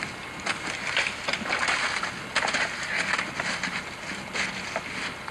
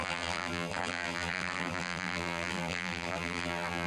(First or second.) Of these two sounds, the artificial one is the second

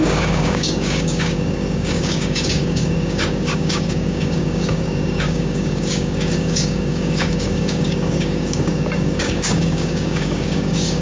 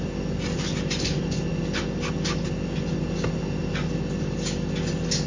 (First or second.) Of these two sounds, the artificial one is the first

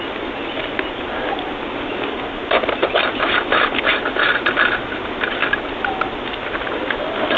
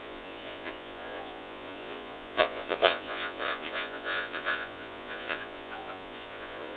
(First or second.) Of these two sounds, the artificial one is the second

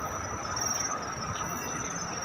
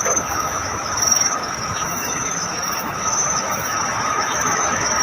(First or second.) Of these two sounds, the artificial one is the second